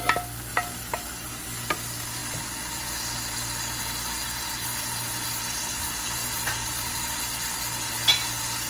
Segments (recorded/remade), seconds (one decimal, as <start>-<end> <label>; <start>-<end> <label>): 0.0-0.5 recorded; 0.5-1.3 remade; 1.3-6.2 recorded; 6.2-7.2 remade; 7.2-8.7 recorded